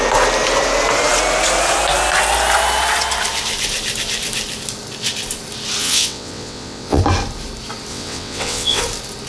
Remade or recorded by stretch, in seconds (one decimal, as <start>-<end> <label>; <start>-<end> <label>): 0.0-5.8 recorded; 5.8-7.0 remade; 7.0-7.9 recorded; 7.9-8.8 remade; 8.8-9.3 recorded

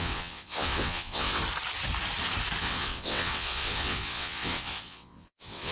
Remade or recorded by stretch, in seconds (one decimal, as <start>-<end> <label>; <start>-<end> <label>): 0.0-1.4 remade; 1.4-2.6 recorded; 2.6-5.7 remade